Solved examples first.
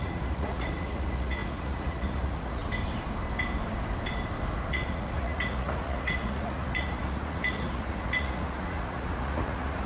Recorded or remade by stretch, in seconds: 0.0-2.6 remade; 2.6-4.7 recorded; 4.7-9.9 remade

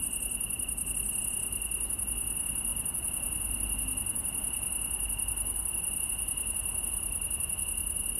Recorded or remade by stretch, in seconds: 0.0-8.2 recorded